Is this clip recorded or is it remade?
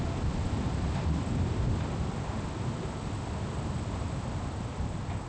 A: recorded